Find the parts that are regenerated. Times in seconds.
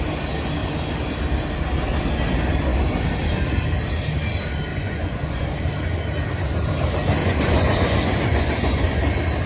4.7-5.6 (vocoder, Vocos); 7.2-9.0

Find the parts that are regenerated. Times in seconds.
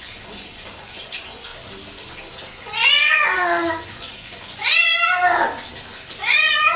0.0-1.5 (vocoder, Vocos); 2.6-4.9; 6.2-6.8